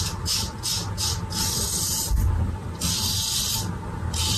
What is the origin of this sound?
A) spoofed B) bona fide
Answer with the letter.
B